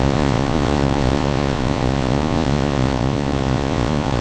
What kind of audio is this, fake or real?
fake